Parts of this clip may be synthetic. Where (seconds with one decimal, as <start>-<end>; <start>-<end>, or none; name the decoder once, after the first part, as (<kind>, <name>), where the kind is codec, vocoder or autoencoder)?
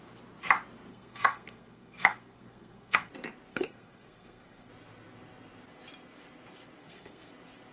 0.9-3.1 (codec, SNAC); 3.5-4.7; 6.8-7.3